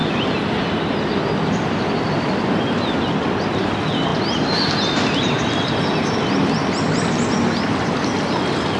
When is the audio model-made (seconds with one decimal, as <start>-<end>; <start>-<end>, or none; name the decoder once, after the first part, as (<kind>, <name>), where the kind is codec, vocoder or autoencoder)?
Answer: none

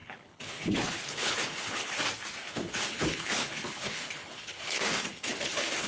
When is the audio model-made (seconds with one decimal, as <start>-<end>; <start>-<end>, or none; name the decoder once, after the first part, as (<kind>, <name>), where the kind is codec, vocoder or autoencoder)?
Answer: 0.0-2.0 (codec, HILCodec); 2.4-5.9

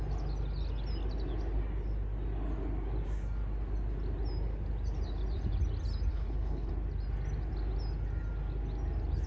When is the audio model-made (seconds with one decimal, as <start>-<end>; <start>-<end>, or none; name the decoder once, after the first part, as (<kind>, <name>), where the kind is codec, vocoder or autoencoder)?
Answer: 6.1-6.7 (codec, HILCodec)

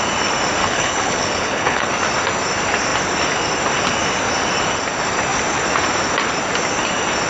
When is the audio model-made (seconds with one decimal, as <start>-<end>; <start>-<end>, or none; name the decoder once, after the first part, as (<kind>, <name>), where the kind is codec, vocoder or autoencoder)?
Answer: 0.6-1.9 (codec, HILCodec)

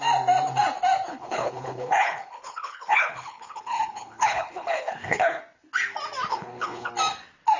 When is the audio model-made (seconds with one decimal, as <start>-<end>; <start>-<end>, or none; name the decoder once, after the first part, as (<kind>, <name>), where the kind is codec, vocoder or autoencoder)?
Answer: 1.1-5.4 (codec, HILCodec); 6.3-6.9

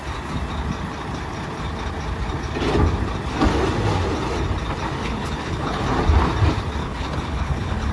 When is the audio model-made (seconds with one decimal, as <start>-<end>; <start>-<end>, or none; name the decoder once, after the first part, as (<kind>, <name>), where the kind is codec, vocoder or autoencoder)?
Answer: 5.0-5.8 (codec, HILCodec); 6.8-7.9

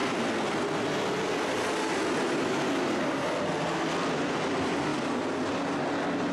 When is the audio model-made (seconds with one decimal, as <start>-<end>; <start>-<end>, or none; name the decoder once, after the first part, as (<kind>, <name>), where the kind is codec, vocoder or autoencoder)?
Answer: none